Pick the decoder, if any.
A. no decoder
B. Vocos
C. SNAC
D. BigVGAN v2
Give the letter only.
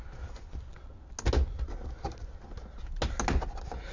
A